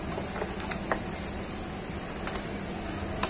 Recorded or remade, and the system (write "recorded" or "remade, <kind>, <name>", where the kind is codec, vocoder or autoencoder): recorded